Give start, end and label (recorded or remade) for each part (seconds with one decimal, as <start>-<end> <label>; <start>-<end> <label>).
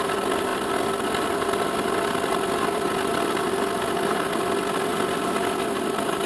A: 0.0-6.3 recorded